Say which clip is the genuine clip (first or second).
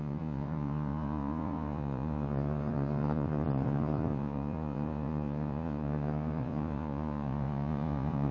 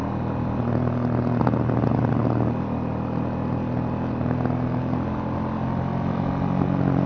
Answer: second